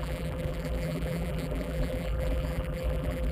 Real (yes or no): no